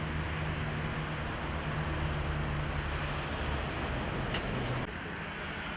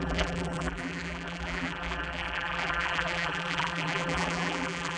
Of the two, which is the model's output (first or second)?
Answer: second